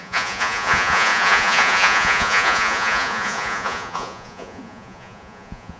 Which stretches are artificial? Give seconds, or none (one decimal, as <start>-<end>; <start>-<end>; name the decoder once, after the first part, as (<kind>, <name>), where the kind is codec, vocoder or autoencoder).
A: 0.0-5.8 (vocoder, Vocos)